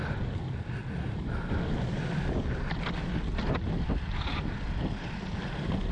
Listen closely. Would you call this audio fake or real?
real